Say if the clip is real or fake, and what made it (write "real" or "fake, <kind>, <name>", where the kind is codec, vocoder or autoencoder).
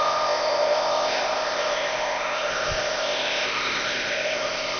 fake, codec, ZipCodec